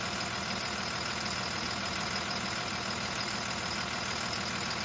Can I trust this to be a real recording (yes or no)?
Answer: yes